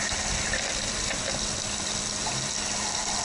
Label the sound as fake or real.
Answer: real